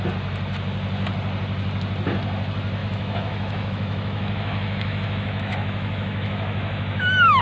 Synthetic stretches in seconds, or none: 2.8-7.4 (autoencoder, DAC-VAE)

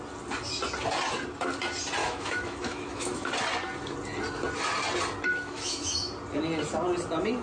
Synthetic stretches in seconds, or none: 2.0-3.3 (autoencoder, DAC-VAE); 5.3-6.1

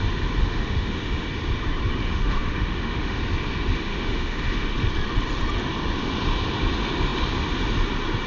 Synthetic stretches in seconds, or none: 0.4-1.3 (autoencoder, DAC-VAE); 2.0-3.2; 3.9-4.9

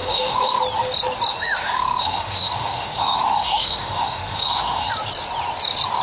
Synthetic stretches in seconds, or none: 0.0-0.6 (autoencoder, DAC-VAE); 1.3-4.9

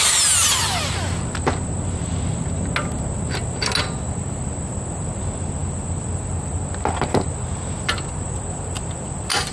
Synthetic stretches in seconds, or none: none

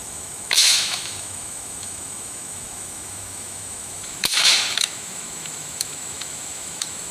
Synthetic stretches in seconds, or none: 0.0-7.1 (autoencoder, DAC-VAE)